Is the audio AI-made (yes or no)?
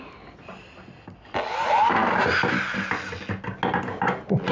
no